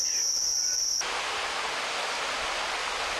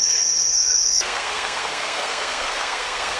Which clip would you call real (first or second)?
first